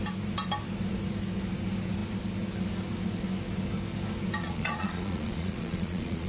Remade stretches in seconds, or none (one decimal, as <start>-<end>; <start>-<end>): 4.4-6.3